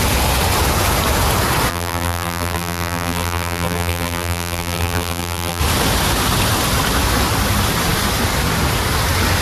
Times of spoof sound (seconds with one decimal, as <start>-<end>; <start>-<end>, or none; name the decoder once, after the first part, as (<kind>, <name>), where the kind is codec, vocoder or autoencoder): 1.7-5.6 (vocoder, BigVGAN v2)